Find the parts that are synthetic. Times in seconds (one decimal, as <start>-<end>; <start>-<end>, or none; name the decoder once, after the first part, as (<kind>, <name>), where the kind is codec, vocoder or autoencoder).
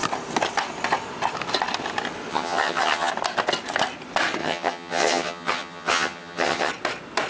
2.3-3.1 (vocoder, HiFi-GAN); 4.4-6.7